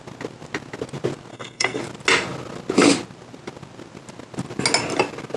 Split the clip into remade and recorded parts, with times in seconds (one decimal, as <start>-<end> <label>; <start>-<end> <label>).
0.0-1.3 recorded; 1.3-1.8 remade; 1.8-5.4 recorded